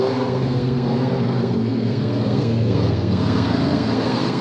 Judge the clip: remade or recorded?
remade